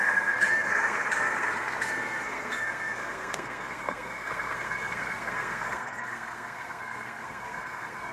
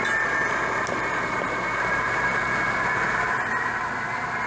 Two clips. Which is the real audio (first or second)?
second